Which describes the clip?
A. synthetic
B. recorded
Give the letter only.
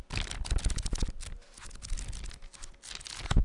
B